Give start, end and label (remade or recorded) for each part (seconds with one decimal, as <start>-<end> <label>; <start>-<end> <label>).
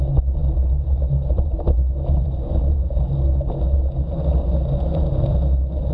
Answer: 0.0-0.4 recorded; 0.4-3.3 remade; 3.3-5.9 recorded